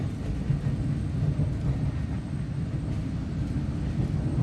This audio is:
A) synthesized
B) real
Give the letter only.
B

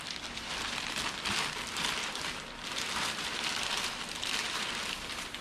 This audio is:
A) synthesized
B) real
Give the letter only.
A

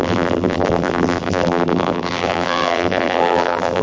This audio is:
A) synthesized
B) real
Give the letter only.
A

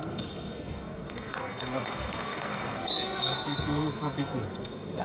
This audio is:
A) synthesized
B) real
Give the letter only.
A